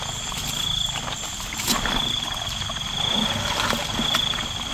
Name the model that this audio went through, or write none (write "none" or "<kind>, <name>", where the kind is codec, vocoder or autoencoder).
none